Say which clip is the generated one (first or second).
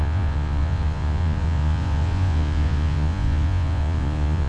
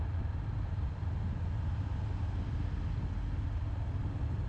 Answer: first